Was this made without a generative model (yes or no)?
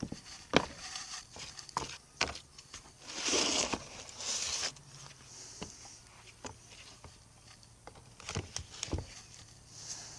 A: yes